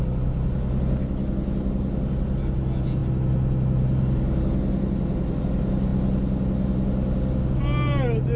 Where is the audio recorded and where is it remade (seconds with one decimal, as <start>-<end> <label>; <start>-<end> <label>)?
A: 0.0-8.4 recorded